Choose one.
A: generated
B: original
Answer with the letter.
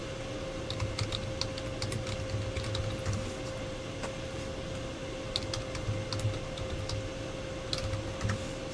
B